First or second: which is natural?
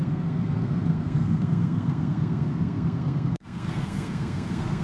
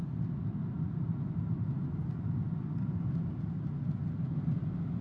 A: second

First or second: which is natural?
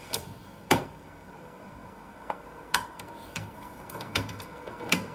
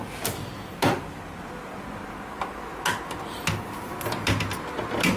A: second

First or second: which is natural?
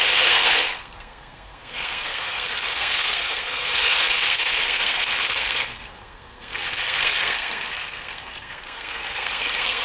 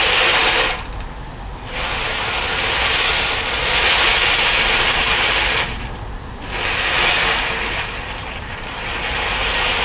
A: second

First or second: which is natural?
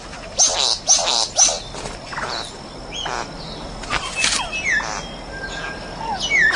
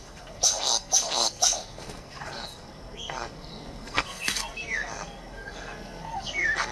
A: first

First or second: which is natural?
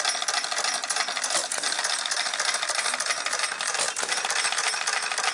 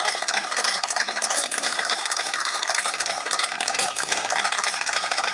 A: first